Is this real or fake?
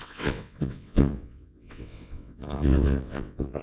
fake